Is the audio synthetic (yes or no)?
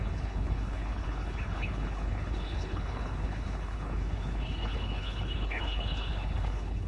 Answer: yes